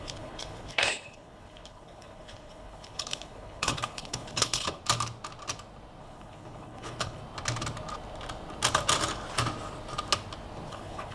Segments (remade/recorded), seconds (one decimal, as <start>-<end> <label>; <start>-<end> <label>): 0.0-4.8 remade; 4.8-6.0 recorded; 6.0-7.2 remade; 7.2-10.7 recorded; 10.7-11.1 remade